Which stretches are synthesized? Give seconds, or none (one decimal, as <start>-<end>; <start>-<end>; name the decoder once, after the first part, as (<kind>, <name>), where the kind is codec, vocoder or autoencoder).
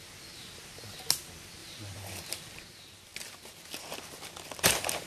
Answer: 1.6-2.3 (vocoder, BigVGAN v2)